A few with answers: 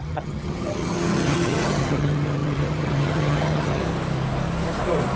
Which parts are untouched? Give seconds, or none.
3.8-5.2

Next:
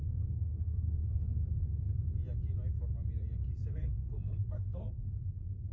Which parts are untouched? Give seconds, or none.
2.1-3.7

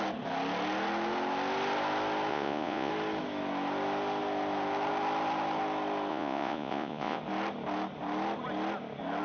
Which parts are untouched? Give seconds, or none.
0.0-2.3; 2.9-6.1; 7.2-9.2